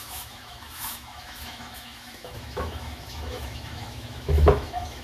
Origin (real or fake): fake